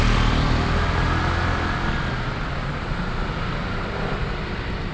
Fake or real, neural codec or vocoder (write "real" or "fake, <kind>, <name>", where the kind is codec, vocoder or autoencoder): real